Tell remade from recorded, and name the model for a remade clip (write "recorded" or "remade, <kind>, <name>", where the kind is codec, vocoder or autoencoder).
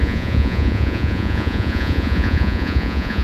remade, vocoder, Vocos